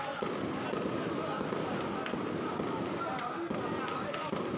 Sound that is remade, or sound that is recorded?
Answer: recorded